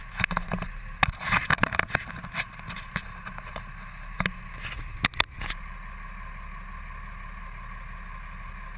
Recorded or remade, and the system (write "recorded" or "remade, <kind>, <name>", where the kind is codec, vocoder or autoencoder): recorded